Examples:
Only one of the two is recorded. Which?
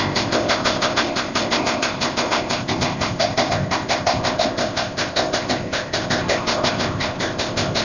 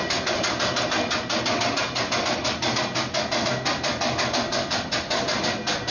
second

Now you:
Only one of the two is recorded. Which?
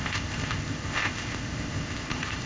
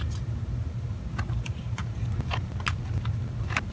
second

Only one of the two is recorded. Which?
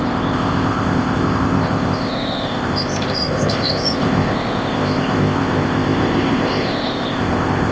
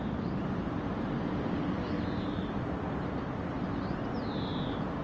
second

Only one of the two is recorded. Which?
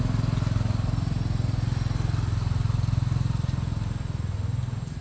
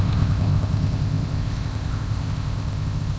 first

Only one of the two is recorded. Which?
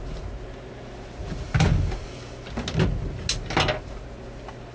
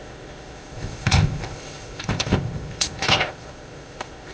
first